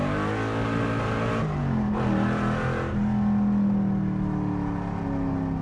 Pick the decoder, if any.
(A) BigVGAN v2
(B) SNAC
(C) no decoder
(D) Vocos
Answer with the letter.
C